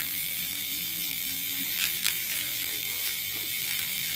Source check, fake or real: fake